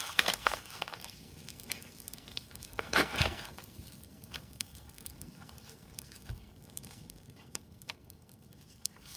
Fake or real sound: fake